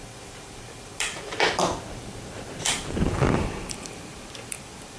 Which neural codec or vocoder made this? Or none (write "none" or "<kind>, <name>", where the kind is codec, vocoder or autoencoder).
vocoder, BigVGAN v2